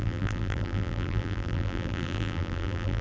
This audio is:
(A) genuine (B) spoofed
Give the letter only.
B